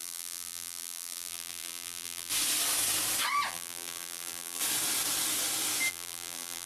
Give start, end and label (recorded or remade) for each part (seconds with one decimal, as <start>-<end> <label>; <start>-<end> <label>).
0.0-2.3 remade; 2.3-3.5 recorded; 3.5-4.6 remade; 4.6-5.9 recorded; 5.9-6.7 remade